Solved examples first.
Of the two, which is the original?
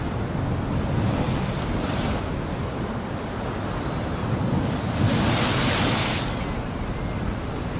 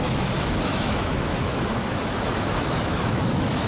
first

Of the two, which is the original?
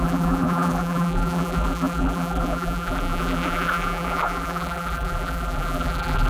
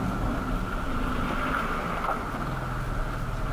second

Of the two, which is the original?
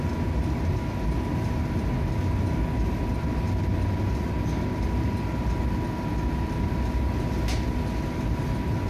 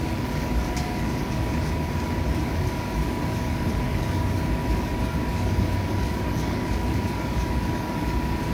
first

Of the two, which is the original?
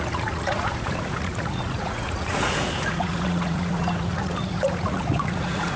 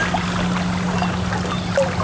second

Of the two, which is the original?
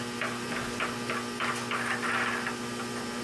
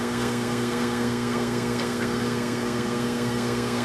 first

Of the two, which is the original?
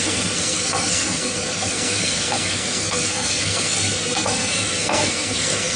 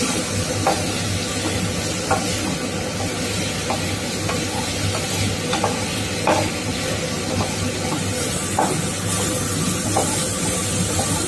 second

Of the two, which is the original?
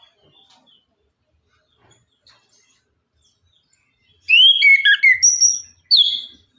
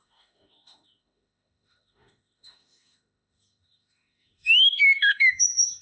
first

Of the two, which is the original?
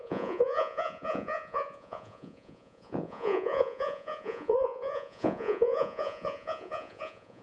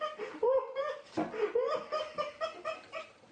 second